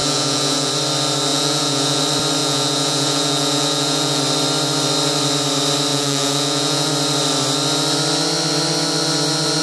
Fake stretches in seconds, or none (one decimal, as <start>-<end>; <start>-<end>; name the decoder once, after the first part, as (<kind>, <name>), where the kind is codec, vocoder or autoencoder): 0.0-0.7 (vocoder, Vocos); 1.3-2.0; 2.4-4.2; 5.9-6.9